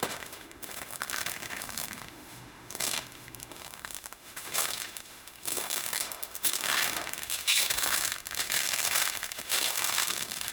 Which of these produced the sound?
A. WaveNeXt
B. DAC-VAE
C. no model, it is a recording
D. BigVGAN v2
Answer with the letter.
B